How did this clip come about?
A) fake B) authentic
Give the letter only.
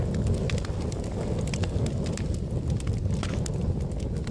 B